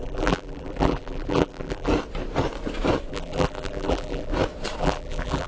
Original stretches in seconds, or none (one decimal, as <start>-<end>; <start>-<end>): 1.9-3.1; 4.3-4.8